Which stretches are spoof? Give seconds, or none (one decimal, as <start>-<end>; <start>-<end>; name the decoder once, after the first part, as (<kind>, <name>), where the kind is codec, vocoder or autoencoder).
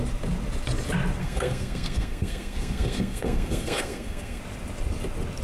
1.2-4.4 (codec, SNAC)